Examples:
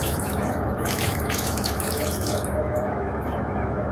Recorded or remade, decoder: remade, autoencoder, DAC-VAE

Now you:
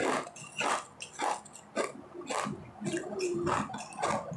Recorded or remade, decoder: recorded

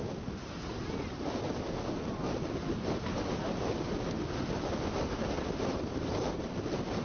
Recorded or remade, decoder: recorded